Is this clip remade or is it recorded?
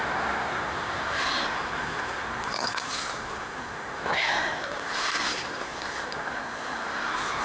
remade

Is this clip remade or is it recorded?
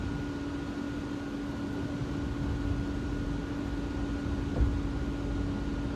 recorded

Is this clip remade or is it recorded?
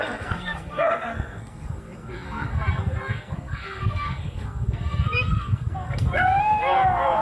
remade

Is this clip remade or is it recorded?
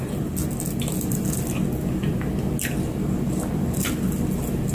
recorded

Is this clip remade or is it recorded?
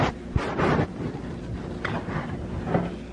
recorded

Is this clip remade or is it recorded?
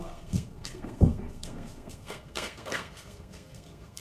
remade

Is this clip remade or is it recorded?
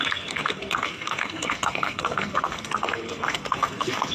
remade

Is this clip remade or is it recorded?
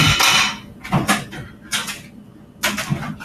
recorded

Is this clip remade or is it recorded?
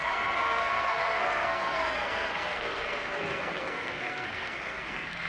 remade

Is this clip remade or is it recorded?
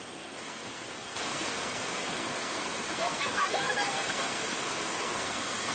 remade